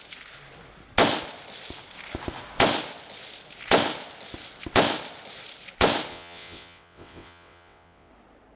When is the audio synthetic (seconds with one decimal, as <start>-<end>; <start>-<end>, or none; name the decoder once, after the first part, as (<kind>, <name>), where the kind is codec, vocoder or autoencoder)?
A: 6.1-8.1 (vocoder, WaveNeXt)